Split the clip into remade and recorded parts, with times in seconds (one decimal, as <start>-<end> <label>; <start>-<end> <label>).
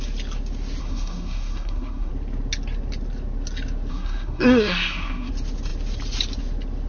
0.0-0.8 recorded; 0.8-2.1 remade; 2.1-3.9 recorded; 3.9-5.3 remade; 5.3-6.9 recorded